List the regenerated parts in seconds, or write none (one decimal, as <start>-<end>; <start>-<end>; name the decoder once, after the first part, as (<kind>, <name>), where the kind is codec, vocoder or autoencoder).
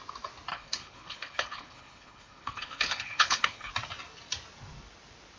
0.5-3.7 (codec, HILCodec)